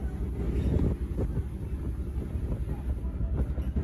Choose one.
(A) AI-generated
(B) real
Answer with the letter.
B